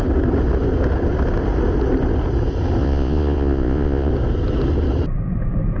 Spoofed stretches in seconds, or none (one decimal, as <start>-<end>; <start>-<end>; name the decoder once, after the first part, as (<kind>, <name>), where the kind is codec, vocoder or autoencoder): 2.8-4.1 (vocoder, Vocos)